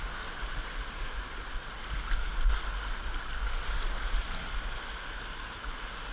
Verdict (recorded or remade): recorded